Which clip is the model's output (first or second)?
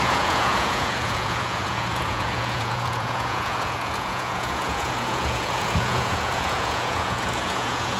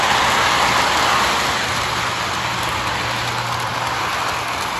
first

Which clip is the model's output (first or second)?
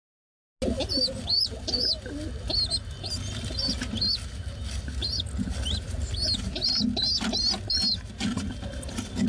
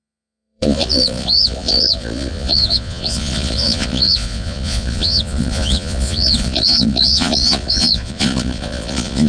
second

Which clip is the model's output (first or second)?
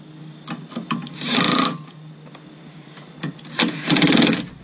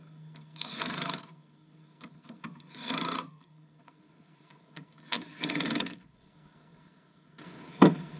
second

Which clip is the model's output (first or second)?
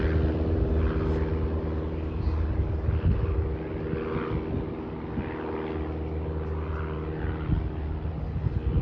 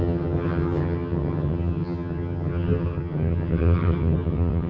second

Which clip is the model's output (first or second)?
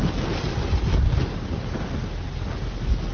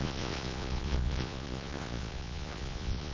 second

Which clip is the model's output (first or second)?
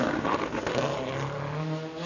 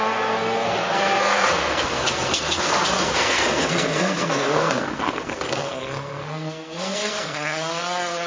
second